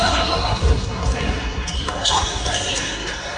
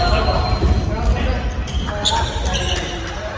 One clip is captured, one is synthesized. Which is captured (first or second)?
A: second